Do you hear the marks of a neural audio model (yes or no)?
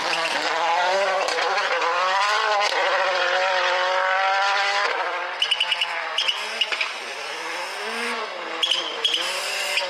yes